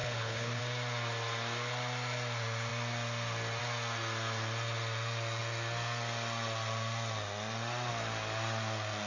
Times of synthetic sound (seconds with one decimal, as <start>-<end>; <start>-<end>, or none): 0.0-0.6